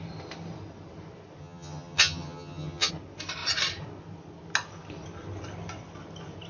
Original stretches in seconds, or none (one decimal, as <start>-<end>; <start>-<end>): 0.0-1.4; 2.9-6.5

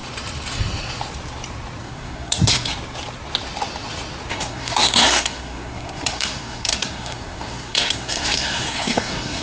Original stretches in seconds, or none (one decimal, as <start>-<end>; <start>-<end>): 0.0-1.8; 2.7-4.3

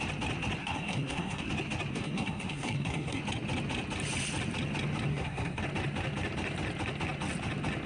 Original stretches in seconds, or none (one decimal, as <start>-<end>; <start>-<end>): 0.0-0.6; 1.5-1.9; 3.2-5.1; 5.6-7.9